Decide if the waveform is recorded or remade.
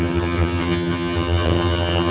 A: remade